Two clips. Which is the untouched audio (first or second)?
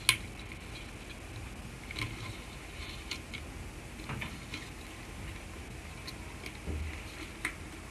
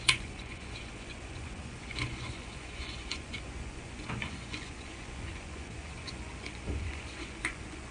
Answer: first